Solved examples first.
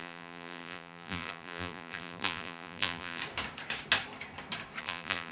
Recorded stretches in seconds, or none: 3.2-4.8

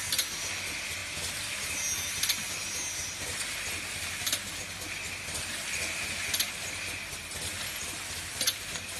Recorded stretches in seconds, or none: 0.0-9.0

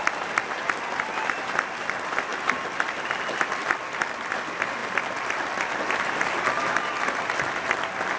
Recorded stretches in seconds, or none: 0.0-2.3; 3.7-4.8; 6.3-8.2

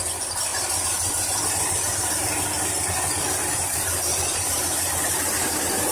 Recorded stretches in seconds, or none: 0.0-4.1

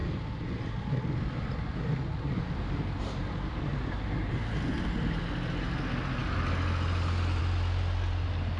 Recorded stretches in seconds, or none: 0.0-8.6

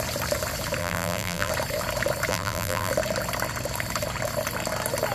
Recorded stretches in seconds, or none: 0.0-0.8; 1.5-2.3; 2.9-5.1

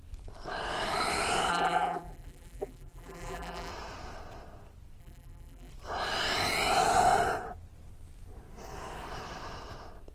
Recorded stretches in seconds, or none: 0.0-1.5; 3.7-5.0; 5.7-10.1